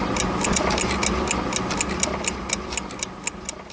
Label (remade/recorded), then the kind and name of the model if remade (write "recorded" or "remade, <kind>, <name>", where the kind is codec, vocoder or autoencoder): recorded